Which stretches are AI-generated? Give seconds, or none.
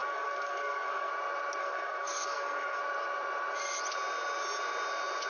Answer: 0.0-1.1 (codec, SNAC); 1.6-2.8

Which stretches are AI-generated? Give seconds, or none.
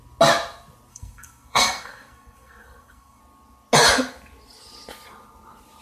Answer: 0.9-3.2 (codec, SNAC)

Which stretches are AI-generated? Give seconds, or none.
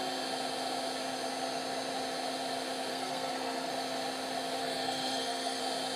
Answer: 2.9-3.7 (codec, SNAC); 4.6-5.6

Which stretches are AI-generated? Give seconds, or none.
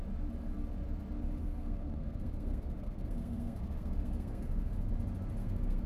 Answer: 1.4-4.9 (codec, SNAC); 5.4-5.9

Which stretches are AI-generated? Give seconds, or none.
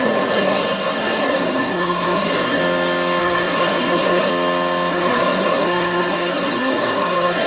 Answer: 0.0-2.6 (codec, SNAC); 3.2-4.3; 4.9-7.5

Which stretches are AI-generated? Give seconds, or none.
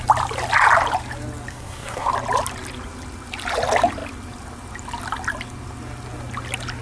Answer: 1.5-2.1 (codec, SNAC)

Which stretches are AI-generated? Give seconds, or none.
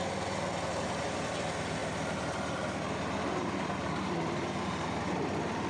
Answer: none